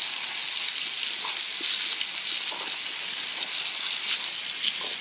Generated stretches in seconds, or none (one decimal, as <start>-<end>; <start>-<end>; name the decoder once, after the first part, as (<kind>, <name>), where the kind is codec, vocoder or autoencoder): none